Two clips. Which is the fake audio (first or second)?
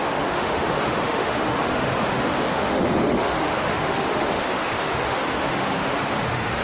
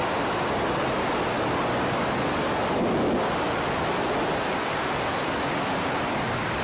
first